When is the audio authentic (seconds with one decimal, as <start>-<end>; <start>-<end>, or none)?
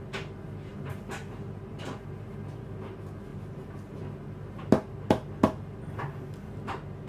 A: 0.0-0.7; 1.7-3.3; 4.0-7.1